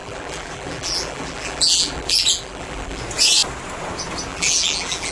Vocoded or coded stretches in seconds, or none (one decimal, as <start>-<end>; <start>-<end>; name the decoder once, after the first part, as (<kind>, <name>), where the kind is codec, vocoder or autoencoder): 0.0-3.0 (vocoder, BigVGAN v2); 4.3-5.1